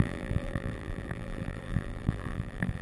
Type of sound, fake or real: fake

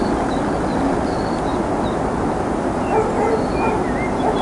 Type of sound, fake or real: real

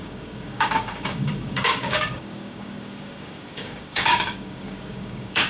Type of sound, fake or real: fake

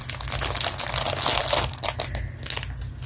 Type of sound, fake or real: real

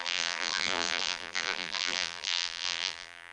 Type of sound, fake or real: fake